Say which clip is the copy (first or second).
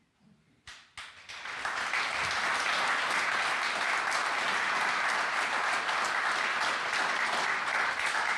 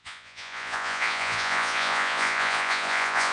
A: second